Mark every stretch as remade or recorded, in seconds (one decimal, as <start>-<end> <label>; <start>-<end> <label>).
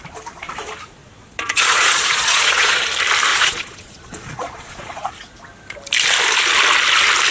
0.0-1.0 recorded; 1.0-2.8 remade; 2.8-3.3 recorded; 3.3-5.1 remade; 5.1-7.3 recorded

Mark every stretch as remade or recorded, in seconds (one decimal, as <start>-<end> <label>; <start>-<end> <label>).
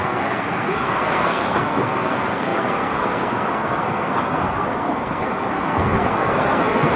0.0-7.0 remade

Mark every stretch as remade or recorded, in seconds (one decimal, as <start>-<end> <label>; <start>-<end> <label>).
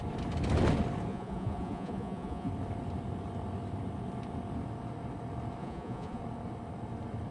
0.0-1.1 recorded; 1.1-2.5 remade; 2.5-5.6 recorded; 5.6-6.2 remade; 6.2-7.3 recorded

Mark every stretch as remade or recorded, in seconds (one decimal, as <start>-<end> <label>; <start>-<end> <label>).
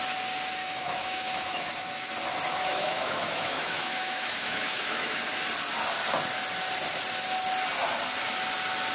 0.0-0.6 recorded; 0.6-2.1 remade; 2.1-2.5 recorded; 2.5-5.2 remade; 5.2-8.9 recorded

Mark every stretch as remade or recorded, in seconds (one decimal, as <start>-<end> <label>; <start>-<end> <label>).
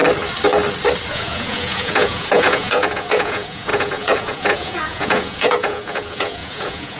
0.0-1.1 recorded; 1.1-7.0 remade